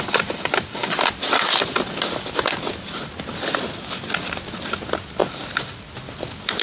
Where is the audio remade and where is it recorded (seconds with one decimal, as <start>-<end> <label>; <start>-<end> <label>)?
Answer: 0.0-6.6 recorded